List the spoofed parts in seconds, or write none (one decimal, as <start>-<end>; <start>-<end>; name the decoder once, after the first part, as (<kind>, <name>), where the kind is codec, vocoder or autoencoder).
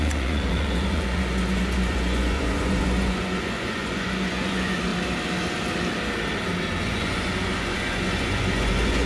0.0-4.9 (vocoder, Vocos); 6.8-9.1